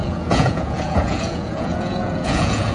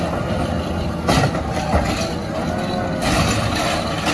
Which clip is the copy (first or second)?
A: first